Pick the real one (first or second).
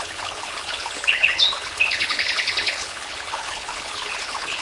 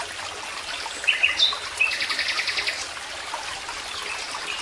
second